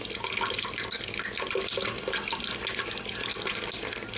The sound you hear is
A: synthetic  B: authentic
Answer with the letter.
B